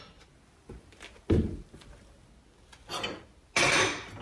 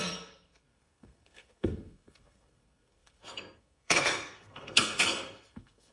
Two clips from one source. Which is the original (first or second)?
first